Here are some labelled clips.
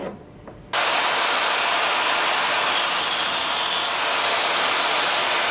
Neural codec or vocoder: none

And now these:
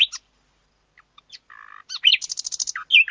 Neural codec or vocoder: none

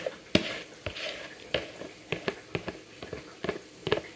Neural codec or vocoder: none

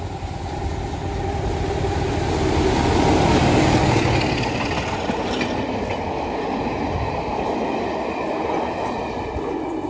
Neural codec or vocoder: none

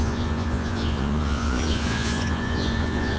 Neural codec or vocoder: vocoder, Vocos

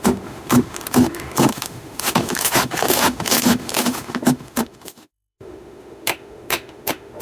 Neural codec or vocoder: autoencoder, DAC-VAE